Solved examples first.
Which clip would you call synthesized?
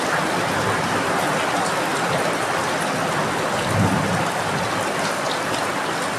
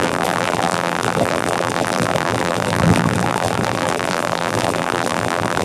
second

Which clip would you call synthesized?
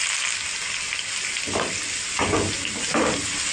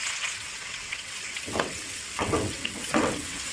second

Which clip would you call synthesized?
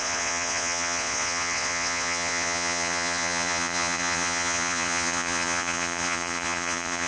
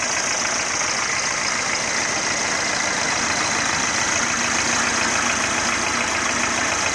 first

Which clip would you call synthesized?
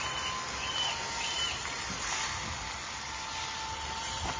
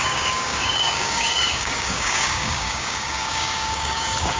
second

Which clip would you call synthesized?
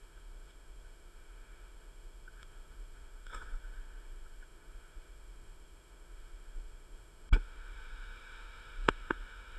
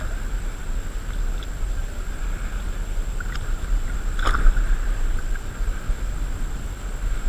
first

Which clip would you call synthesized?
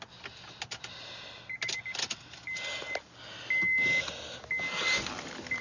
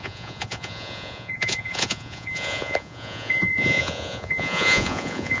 second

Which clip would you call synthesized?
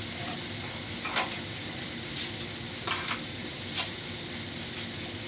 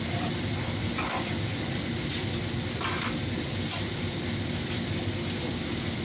second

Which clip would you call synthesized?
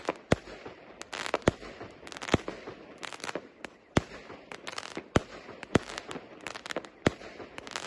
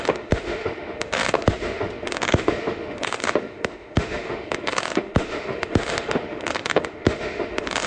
second